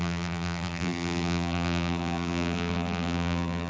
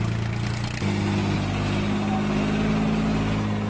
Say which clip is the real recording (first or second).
second